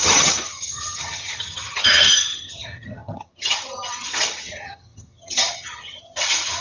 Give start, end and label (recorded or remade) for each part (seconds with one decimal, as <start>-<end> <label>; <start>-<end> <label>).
0.0-6.6 remade